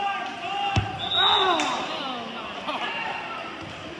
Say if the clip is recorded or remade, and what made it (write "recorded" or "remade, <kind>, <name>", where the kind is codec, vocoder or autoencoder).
recorded